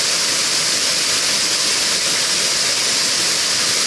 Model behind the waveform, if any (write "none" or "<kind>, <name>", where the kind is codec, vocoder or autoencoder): none